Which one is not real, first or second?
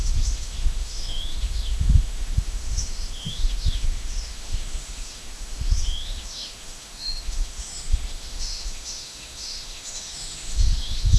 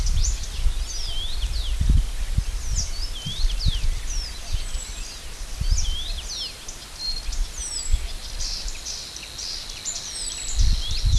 first